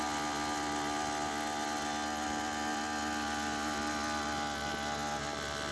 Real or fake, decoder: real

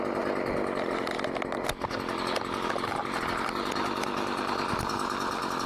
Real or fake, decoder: real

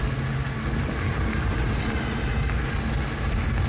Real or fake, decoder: real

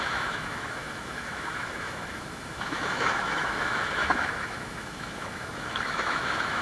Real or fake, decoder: fake, autoencoder, DAC-VAE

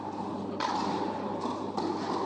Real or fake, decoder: real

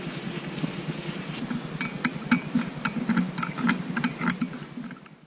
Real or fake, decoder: real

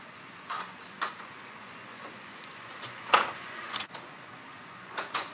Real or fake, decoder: fake, vocoder, Vocos